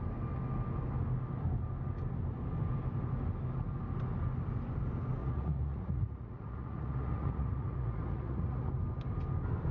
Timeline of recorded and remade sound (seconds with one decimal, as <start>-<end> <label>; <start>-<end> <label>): 0.0-5.2 recorded; 5.2-8.7 remade; 8.7-9.7 recorded